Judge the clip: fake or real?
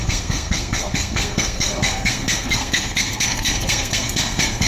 fake